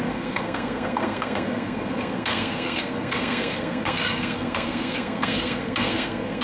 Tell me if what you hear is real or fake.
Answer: fake